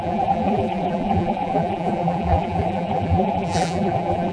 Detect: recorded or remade remade